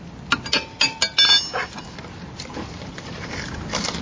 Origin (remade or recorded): recorded